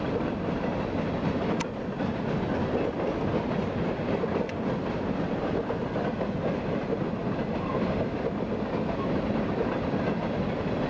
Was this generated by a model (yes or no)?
no